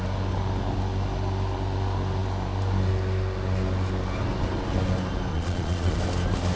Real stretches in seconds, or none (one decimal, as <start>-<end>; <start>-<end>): 0.0-5.3; 6.0-6.6